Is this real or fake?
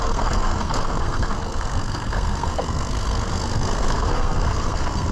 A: fake